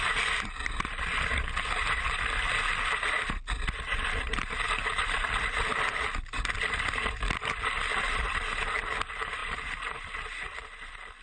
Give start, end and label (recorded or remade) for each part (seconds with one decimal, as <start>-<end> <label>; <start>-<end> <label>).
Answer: 0.0-9.4 recorded; 9.4-10.0 remade; 10.0-11.2 recorded